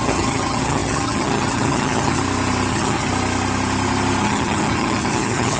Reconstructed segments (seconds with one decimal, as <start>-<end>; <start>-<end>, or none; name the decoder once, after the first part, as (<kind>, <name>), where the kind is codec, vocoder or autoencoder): 0.0-2.2 (vocoder, HiFi-GAN); 2.7-3.1; 4.2-5.6